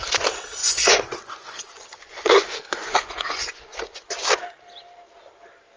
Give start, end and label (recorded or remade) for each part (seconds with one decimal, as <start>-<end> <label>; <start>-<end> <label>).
0.0-0.6 recorded; 0.6-4.1 remade; 4.1-5.8 recorded